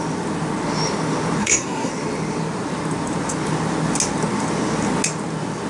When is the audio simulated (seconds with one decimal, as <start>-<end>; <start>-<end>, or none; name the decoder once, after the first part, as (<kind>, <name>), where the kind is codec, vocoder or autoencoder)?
1.4-1.9 (codec, SNAC)